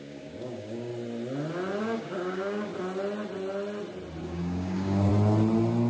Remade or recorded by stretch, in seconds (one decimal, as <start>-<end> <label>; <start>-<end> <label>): 0.0-0.9 remade; 0.9-1.8 recorded; 1.8-2.7 remade; 2.7-4.2 recorded; 4.2-5.1 remade; 5.1-5.9 recorded